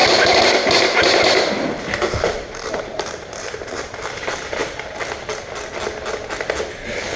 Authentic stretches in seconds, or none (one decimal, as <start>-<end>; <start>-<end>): 4.6-7.2